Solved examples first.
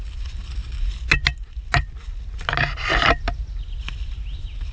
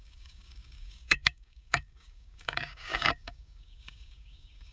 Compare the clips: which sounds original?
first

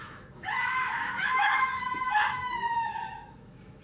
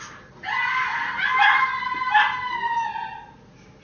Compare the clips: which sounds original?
second